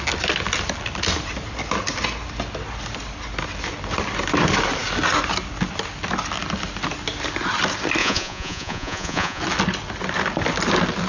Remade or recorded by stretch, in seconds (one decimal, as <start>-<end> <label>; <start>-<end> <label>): 0.0-8.0 recorded; 8.0-9.4 remade; 9.4-11.1 recorded